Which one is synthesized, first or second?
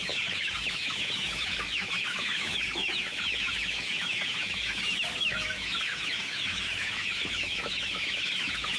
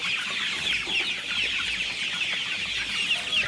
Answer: first